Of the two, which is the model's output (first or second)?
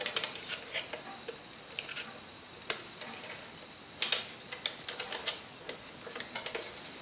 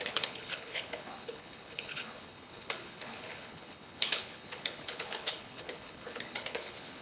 second